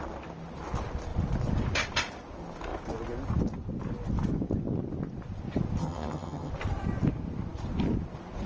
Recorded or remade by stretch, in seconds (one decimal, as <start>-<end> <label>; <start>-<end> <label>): 0.0-5.8 recorded; 5.8-6.5 remade; 6.5-8.5 recorded